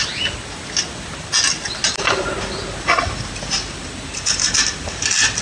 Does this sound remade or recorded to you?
recorded